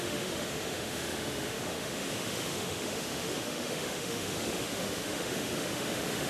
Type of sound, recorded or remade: remade